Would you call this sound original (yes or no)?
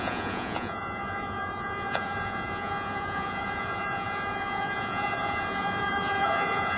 no